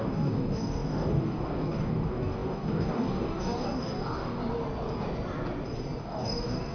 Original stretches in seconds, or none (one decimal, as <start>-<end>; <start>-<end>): 4.4-6.0